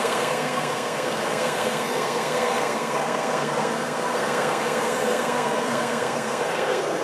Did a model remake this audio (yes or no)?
yes